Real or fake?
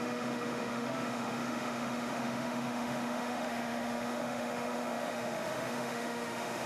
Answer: fake